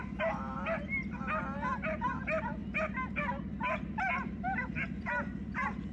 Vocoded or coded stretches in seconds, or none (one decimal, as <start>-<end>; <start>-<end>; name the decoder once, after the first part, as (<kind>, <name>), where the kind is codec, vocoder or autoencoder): none